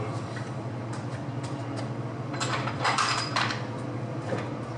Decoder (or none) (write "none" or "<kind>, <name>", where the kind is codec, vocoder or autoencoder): vocoder, BigVGAN v2